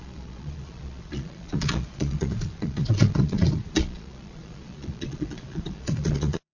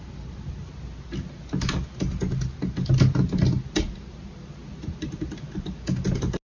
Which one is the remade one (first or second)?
first